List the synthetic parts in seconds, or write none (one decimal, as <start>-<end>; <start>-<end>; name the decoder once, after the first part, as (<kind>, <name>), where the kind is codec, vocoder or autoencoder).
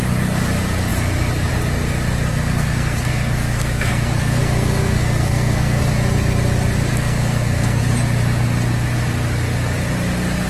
2.3-5.8 (codec, SNAC); 6.9-7.8